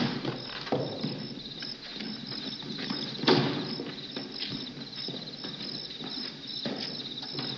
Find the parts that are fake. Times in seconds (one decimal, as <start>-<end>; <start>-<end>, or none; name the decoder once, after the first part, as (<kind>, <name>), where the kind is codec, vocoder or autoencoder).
none

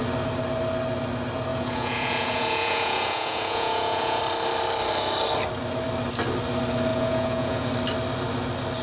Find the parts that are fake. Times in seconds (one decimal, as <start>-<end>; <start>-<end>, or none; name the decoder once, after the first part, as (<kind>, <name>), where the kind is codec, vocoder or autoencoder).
1.5-4.2 (vocoder, Vocos); 6.9-7.7

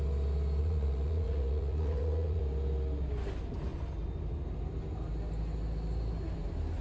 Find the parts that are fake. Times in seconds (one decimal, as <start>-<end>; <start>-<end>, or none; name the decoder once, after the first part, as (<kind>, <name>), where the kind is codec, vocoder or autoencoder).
0.6-2.4 (vocoder, Vocos)

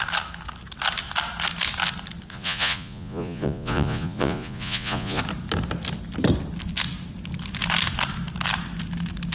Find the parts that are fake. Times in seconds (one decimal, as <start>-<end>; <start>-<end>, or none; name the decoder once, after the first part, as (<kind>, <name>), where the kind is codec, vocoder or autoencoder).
2.3-5.2 (vocoder, Vocos)

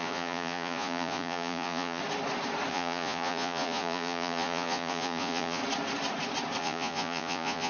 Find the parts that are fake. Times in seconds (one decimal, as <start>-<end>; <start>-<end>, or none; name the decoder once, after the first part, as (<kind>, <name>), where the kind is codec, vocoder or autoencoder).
0.0-2.0 (vocoder, Vocos); 2.7-5.6; 6.6-7.7

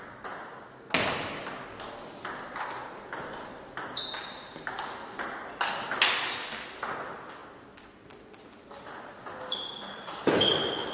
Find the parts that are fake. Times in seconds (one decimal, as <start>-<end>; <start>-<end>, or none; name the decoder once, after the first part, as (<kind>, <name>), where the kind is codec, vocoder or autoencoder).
9.7-10.2 (vocoder, Vocos)

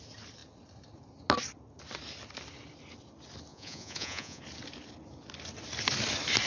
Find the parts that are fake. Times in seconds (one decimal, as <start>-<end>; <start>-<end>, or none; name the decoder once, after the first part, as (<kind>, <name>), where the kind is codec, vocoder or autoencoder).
3.5-4.4 (vocoder, Vocos)

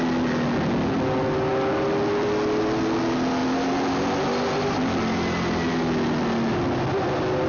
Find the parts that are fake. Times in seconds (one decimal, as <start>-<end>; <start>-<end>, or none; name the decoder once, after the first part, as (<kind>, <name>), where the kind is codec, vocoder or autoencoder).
none